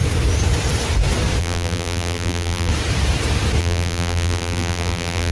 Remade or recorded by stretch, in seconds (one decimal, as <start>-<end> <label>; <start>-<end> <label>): 0.0-1.4 recorded; 1.4-2.7 remade; 2.7-3.6 recorded; 3.6-5.3 remade